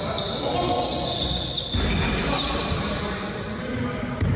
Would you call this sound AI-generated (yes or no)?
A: no